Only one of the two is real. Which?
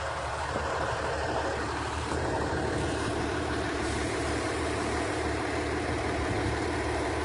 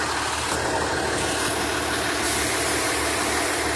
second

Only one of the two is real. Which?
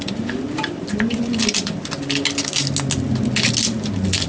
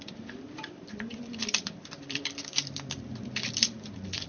first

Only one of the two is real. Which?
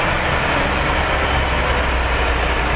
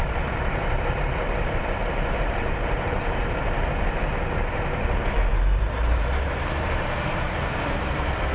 first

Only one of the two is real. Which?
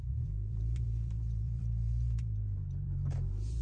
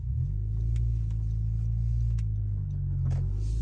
second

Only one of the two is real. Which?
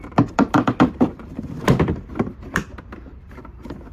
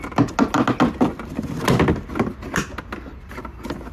second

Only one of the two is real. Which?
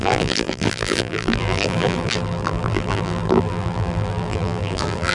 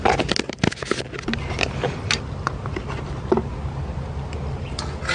second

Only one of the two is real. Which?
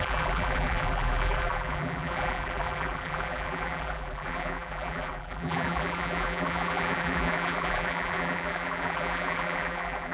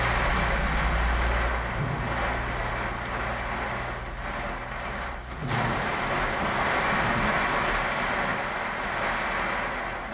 second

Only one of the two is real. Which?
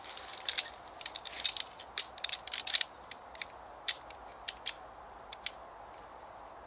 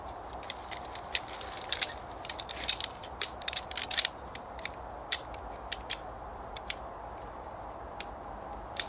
first